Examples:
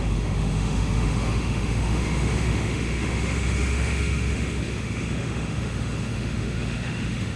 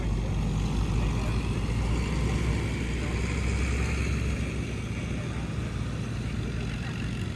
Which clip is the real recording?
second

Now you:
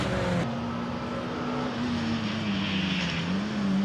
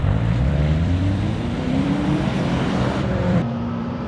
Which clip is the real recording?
first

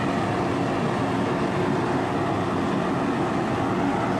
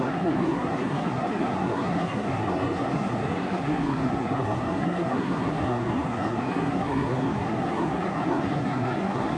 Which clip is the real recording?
first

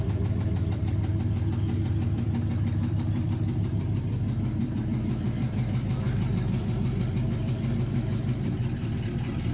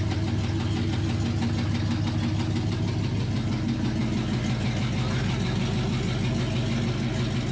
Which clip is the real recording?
second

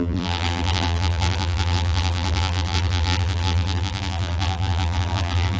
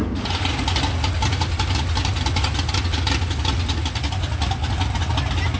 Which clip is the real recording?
second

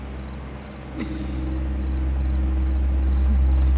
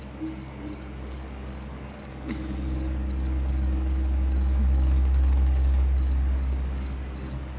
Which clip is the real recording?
first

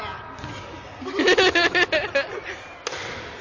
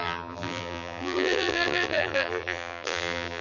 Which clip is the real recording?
first